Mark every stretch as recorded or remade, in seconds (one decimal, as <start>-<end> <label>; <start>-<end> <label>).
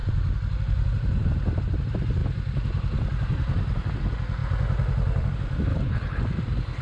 0.0-5.7 recorded; 5.7-6.2 remade; 6.2-6.8 recorded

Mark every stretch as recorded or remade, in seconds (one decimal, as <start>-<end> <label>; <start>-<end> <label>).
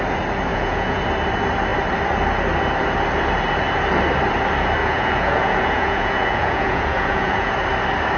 0.0-0.5 recorded; 0.5-1.0 remade; 1.0-4.8 recorded; 4.8-7.5 remade; 7.5-8.2 recorded